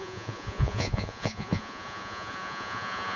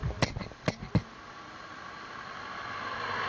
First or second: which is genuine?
second